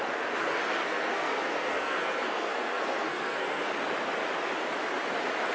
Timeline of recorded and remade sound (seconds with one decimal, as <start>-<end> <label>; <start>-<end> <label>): 0.0-0.4 recorded; 0.4-3.7 remade; 3.7-5.5 recorded